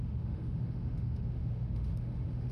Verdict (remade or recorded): remade